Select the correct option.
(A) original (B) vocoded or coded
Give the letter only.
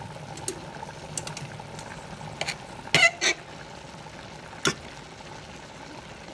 A